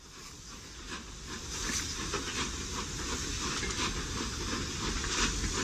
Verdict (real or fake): real